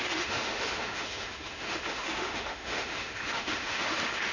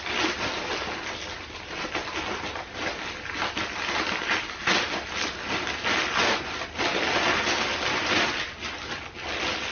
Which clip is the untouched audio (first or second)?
second